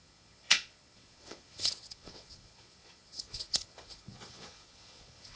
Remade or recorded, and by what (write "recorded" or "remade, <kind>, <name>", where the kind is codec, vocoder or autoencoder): remade, vocoder, Vocos